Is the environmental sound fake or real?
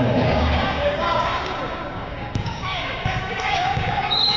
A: fake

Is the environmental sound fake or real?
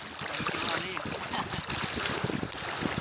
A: real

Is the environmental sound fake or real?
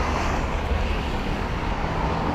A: fake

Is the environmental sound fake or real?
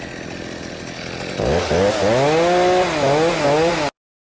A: real